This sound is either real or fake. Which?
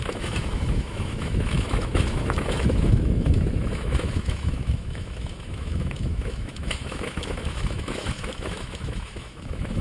fake